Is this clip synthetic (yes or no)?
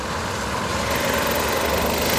no